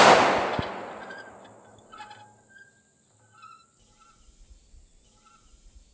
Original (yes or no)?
yes